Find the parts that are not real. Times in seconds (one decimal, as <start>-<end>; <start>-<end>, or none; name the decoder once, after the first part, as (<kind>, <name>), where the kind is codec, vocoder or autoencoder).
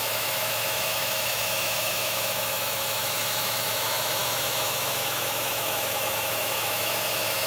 0.0-7.5 (autoencoder, DAC-VAE)